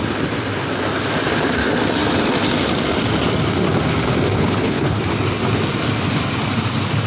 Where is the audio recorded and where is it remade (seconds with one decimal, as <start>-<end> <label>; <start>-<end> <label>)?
0.0-4.4 recorded; 4.4-5.0 remade; 5.0-7.1 recorded